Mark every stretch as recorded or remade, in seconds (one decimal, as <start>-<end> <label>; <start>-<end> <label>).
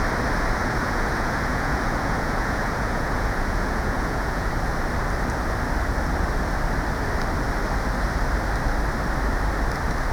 0.0-0.6 recorded; 0.6-4.5 remade; 4.5-10.1 recorded